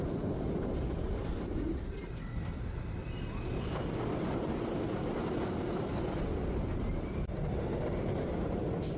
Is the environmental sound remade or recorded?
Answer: recorded